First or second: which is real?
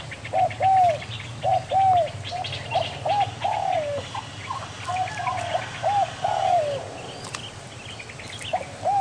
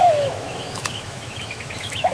first